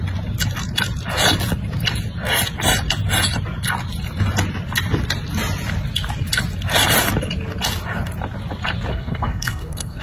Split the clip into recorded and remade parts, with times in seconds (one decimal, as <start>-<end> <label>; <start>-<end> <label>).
0.0-8.9 recorded; 8.9-10.0 remade